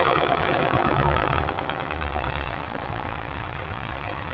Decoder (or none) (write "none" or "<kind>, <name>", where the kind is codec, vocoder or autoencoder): vocoder, WaveNeXt